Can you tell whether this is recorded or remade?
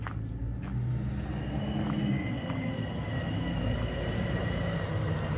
recorded